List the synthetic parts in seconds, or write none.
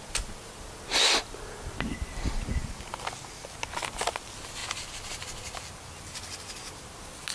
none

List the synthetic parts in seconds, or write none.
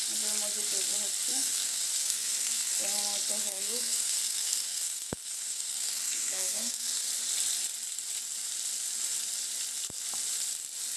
1.3-2.7; 3.4-7.1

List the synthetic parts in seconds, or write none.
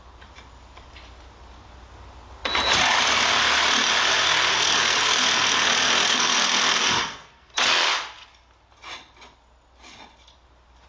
4.1-7.5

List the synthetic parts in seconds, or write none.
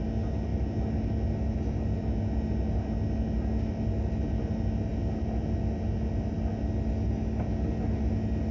none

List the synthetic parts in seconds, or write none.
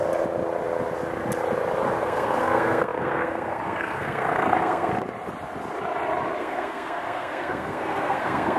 2.0-4.9; 6.4-8.6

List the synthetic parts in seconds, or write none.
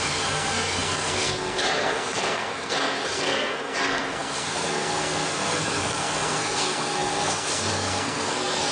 0.0-8.7